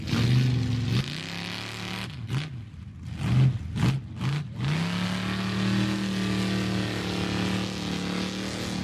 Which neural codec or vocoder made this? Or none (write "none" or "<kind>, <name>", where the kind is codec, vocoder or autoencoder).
none